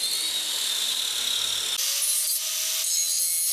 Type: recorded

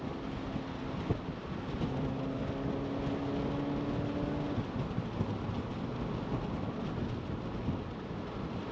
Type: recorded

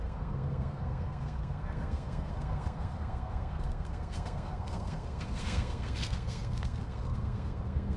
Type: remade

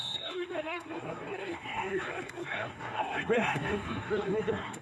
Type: remade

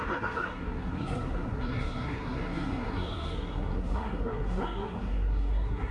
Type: remade